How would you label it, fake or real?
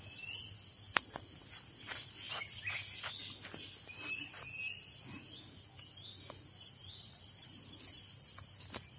real